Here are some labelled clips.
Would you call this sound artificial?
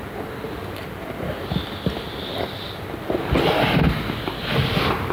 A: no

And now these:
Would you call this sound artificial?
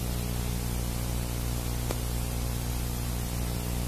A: no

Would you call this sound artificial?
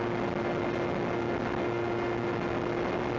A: no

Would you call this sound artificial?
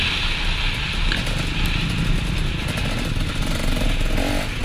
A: no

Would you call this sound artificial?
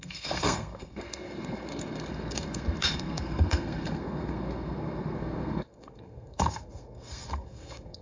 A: yes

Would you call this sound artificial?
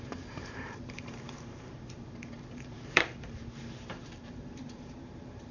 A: yes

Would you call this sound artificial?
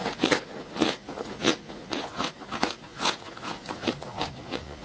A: yes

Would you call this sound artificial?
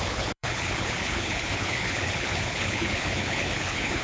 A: yes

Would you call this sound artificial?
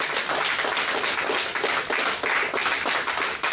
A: no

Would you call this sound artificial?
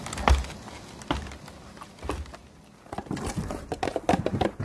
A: no